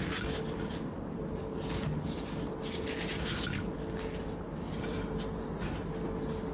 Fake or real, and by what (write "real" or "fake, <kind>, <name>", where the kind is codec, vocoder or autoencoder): real